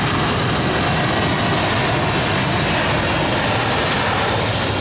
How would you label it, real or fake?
real